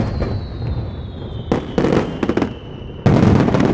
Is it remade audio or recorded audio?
recorded